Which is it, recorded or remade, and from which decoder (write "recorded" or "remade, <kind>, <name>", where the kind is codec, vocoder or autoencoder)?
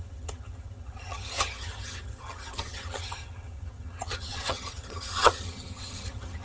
remade, vocoder, HiFi-GAN